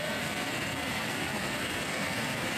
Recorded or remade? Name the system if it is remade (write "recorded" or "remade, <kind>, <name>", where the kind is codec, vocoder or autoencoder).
remade, codec, SNAC